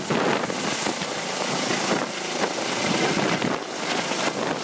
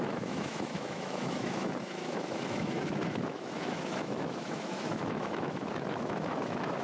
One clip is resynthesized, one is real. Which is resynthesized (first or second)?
second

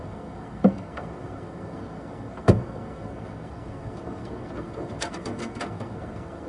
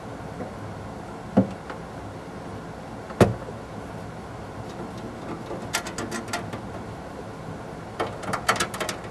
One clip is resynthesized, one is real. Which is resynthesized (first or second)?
first